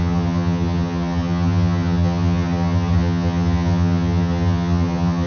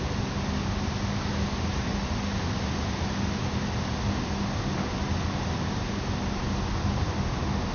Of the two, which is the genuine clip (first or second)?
second